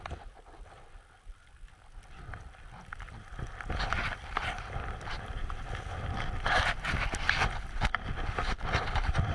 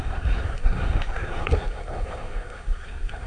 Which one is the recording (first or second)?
first